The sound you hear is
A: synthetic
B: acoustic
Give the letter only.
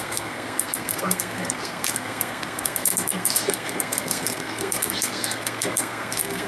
A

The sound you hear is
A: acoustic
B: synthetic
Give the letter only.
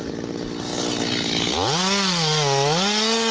A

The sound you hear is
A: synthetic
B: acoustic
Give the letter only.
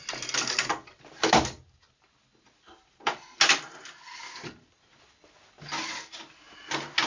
B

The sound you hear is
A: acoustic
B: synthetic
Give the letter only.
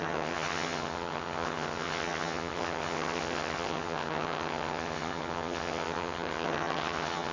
B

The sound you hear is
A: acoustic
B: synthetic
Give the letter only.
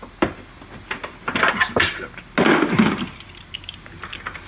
A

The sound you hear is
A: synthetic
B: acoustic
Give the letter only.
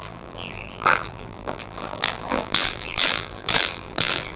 A